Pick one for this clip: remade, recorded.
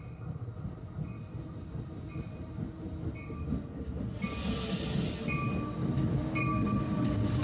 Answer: recorded